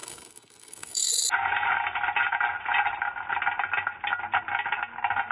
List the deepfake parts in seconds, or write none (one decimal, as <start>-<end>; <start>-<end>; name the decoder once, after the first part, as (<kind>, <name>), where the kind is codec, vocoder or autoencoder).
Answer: 0.0-1.1 (codec, SNAC)